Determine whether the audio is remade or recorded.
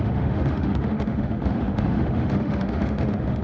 remade